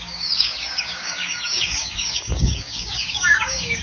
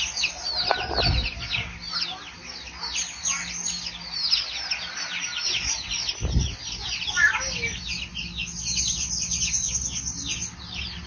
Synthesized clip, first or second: first